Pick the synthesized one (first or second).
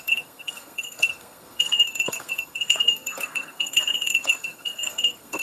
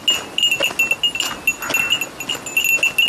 first